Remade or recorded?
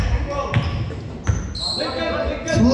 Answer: recorded